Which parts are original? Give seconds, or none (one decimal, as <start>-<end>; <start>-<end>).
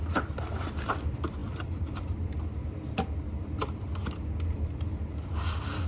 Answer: 0.0-1.4; 3.8-5.9